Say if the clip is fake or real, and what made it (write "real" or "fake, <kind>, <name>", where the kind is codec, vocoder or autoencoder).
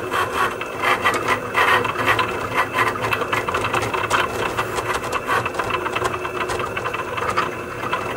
real